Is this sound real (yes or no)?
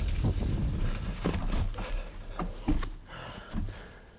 yes